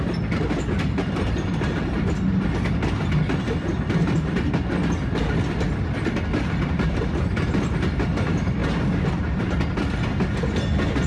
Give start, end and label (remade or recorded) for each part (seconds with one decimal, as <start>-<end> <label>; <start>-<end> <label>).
0.0-11.1 recorded